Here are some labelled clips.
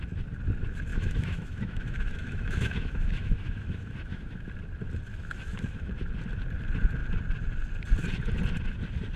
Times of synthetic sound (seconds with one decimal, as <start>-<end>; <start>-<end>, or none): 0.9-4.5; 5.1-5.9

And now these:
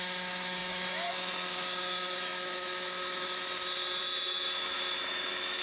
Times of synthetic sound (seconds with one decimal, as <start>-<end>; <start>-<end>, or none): 0.0-5.6

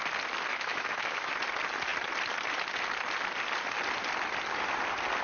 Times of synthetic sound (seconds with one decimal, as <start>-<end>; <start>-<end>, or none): 0.5-1.3

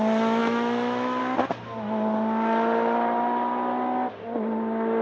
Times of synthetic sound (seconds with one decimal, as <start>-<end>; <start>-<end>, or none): 0.4-1.2